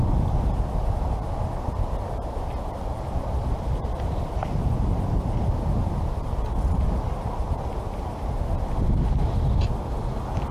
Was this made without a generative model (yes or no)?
yes